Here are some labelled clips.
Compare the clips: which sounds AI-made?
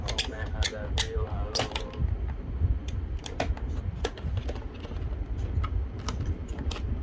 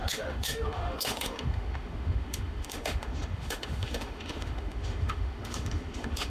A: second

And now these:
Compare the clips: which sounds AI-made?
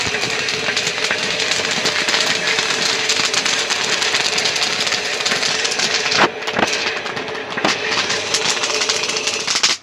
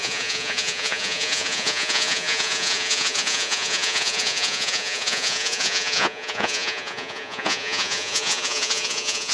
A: second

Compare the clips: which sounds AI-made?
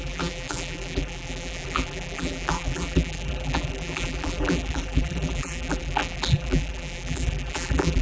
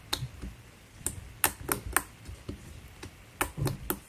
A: first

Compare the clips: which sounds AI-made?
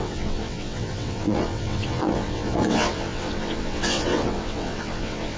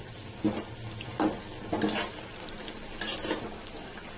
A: first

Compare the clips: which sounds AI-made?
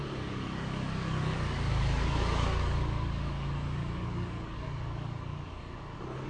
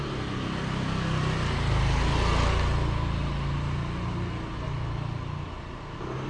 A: first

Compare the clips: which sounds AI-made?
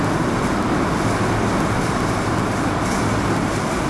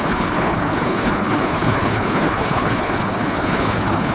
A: second